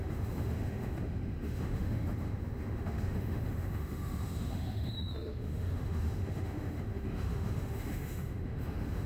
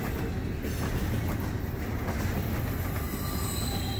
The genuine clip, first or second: second